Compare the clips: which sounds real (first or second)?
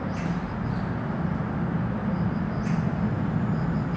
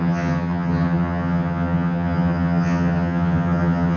first